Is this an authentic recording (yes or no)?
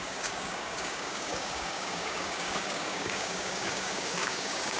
no